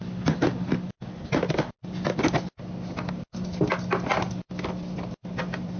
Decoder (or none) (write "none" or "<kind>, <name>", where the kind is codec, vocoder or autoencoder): none